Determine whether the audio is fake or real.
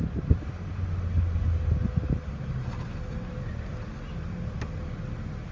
real